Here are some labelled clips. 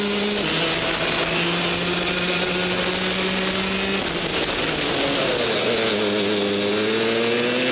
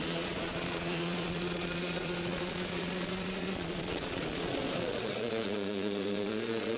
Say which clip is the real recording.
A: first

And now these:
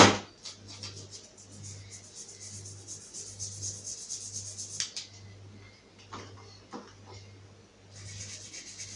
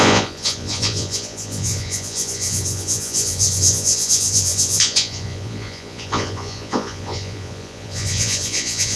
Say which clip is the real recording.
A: first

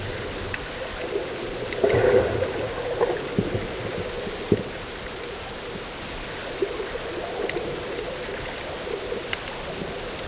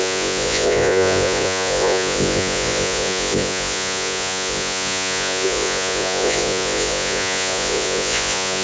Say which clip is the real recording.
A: first